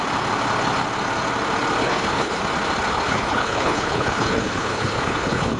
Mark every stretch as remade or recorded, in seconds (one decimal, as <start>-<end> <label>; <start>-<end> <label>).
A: 0.0-1.8 recorded; 1.8-2.4 remade; 2.4-2.9 recorded; 2.9-5.6 remade

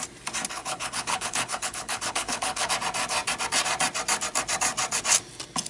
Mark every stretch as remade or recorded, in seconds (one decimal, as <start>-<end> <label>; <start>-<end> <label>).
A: 0.0-0.6 recorded; 0.6-2.7 remade; 2.7-5.7 recorded

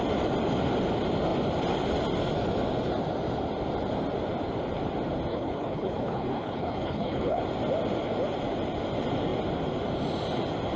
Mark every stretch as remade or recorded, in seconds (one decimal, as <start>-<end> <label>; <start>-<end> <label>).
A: 0.0-5.3 recorded; 5.3-7.4 remade; 7.4-10.8 recorded

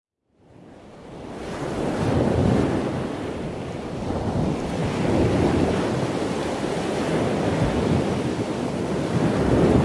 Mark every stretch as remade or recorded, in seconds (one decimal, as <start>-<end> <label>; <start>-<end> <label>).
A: 0.0-9.8 recorded

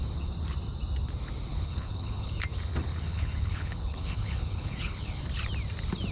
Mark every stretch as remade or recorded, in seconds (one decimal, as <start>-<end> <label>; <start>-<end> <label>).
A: 0.0-1.5 recorded; 1.5-2.3 remade; 2.3-2.9 recorded; 2.9-5.2 remade; 5.2-6.1 recorded

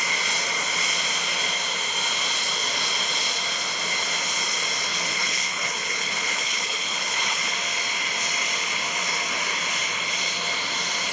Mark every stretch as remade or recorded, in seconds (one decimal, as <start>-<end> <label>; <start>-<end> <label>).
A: 0.0-4.9 recorded; 4.9-7.5 remade; 7.5-11.1 recorded